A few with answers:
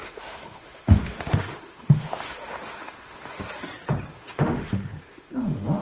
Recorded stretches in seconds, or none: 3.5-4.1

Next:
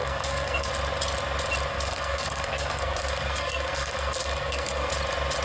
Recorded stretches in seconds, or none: 0.7-1.7; 4.9-5.4

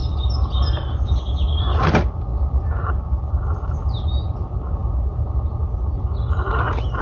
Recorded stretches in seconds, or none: 0.0-7.0

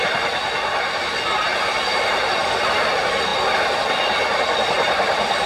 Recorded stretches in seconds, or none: 0.0-5.5

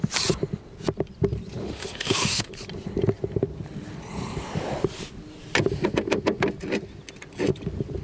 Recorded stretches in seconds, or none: 0.0-1.6; 2.5-8.0

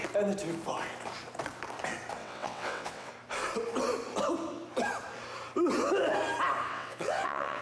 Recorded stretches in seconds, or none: 0.0-2.2; 3.1-6.7

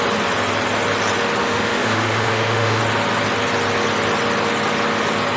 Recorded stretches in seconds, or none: 0.0-1.4; 2.8-5.4

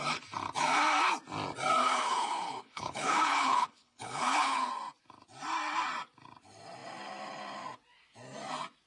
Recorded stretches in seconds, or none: 0.0-1.8; 4.7-8.9